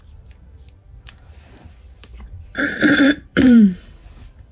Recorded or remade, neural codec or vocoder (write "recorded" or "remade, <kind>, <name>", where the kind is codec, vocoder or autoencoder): remade, vocoder, BigVGAN v2